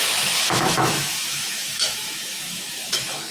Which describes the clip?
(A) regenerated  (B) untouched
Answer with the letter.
A